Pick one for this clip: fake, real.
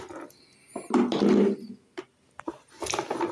real